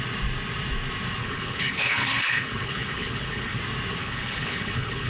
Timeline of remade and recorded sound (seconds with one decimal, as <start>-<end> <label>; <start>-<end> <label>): 0.0-1.2 recorded; 1.2-3.6 remade; 3.6-4.0 recorded; 4.0-5.1 remade